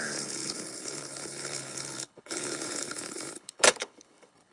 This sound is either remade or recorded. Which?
remade